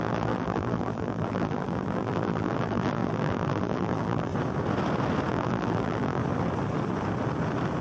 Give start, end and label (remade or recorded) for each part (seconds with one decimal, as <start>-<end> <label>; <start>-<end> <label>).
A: 0.0-4.3 remade; 4.3-5.3 recorded; 5.3-6.2 remade; 6.2-7.8 recorded

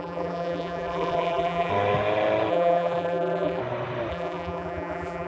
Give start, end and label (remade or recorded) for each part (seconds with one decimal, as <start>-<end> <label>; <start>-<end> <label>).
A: 0.0-1.7 remade; 1.7-2.5 recorded; 2.5-3.6 remade; 3.6-4.1 recorded; 4.1-5.3 remade